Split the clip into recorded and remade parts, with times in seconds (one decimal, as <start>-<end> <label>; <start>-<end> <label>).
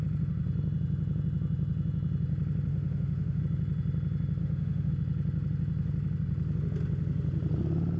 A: 0.0-2.7 recorded; 2.7-3.4 remade; 3.4-4.4 recorded; 4.4-4.9 remade; 4.9-8.0 recorded